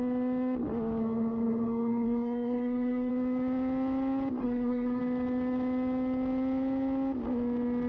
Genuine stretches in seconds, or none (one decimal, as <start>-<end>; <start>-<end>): 0.0-1.0; 3.1-4.4; 5.0-7.9